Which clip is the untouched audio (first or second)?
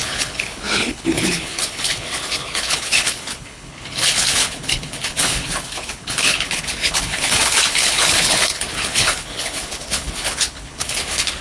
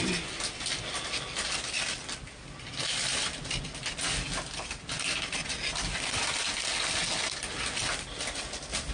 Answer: second